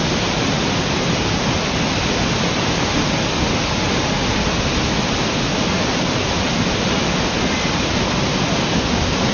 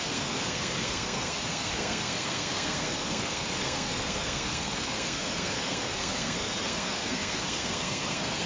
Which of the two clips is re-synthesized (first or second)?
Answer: second